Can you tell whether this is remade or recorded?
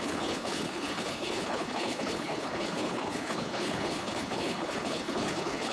remade